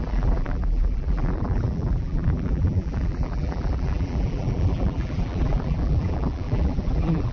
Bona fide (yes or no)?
no